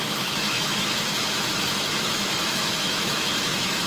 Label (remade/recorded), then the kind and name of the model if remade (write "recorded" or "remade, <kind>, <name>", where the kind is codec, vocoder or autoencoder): remade, autoencoder, DAC-VAE